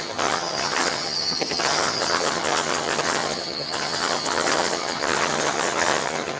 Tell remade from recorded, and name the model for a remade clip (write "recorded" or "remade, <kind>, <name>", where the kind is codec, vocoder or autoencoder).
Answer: remade, vocoder, HiFi-GAN